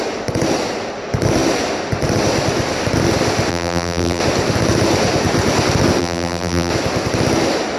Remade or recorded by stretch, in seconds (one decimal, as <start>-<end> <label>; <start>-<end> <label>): 0.0-3.5 recorded; 3.5-4.2 remade; 4.2-6.0 recorded; 6.0-6.7 remade; 6.7-7.8 recorded

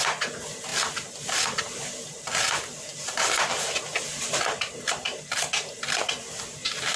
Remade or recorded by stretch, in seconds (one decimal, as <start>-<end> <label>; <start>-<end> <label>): 0.0-7.0 remade

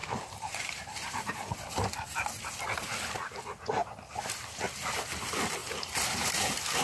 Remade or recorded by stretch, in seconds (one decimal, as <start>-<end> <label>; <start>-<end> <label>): 0.0-1.3 remade; 1.3-5.6 recorded; 5.6-6.3 remade; 6.3-6.8 recorded